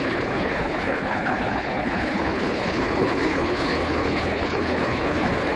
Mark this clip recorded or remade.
remade